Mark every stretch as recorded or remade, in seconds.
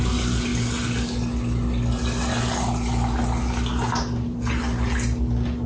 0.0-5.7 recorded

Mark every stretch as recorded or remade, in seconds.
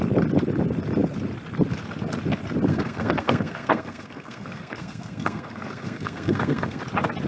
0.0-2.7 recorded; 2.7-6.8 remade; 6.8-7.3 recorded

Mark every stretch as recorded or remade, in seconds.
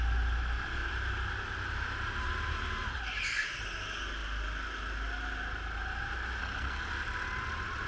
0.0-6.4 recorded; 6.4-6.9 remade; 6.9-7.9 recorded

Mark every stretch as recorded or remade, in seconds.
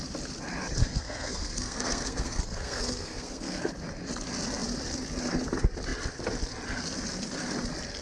0.0-0.8 recorded; 0.8-3.7 remade; 3.7-8.0 recorded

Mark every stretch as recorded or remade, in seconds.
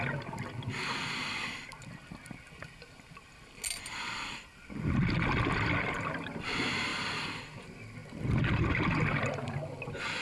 0.0-10.2 recorded